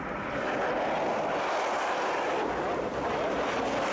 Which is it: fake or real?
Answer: real